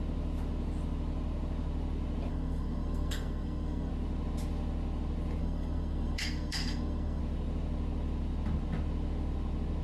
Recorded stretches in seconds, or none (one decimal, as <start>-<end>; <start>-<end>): 0.0-2.3; 3.9-5.4; 7.2-9.8